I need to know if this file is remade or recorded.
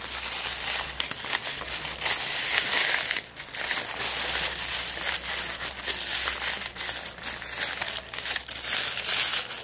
recorded